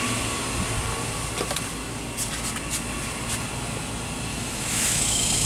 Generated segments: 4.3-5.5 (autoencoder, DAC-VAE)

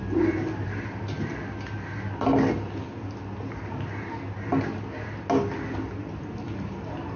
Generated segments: none

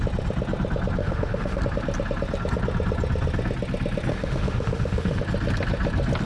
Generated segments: 1.0-1.6 (autoencoder, DAC-VAE); 4.1-5.2